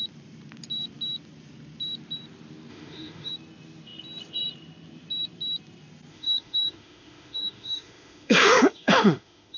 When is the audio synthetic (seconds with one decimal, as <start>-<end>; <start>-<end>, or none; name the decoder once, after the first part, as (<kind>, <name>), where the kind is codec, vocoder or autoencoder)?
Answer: 2.7-3.3 (autoencoder, DAC-VAE); 6.1-9.6